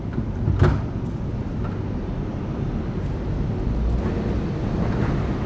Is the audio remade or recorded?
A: recorded